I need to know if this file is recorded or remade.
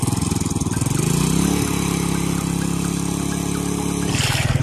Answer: recorded